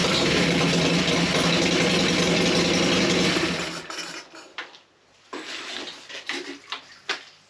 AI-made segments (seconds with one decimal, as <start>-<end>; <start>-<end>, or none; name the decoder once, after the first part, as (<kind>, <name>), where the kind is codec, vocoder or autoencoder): 0.0-0.5 (vocoder, BigVGAN v2)